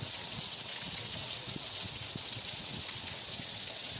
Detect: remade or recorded remade